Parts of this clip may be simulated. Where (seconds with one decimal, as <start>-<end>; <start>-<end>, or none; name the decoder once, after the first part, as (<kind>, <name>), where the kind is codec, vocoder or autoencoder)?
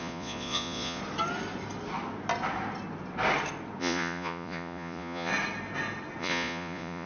0.0-1.0 (vocoder, Vocos); 3.8-5.3; 6.2-7.1